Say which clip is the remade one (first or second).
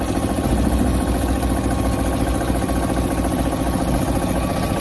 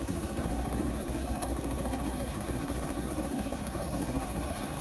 second